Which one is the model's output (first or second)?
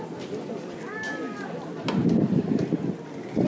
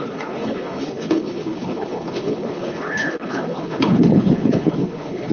second